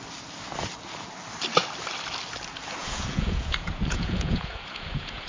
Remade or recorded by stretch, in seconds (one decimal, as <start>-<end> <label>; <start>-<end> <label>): 0.0-2.8 recorded; 2.8-5.3 remade